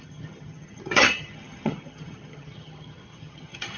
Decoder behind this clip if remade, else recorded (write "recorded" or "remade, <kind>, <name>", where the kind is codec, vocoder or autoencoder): remade, vocoder, HiFi-GAN